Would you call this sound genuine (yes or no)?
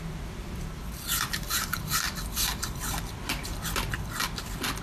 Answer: no